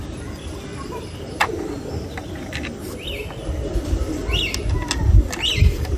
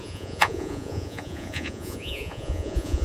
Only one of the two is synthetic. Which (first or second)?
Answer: second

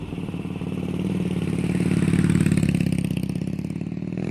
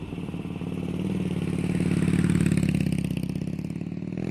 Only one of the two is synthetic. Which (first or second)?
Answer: first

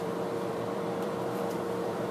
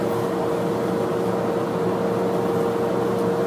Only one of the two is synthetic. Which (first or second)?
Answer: first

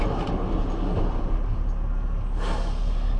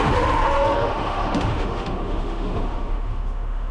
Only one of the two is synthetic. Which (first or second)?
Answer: second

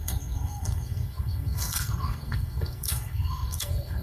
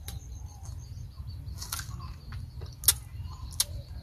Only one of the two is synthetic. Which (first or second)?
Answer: first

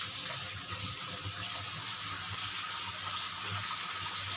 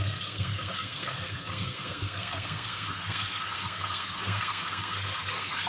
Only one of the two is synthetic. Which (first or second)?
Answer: second